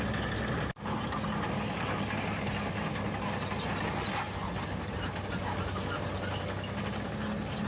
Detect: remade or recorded recorded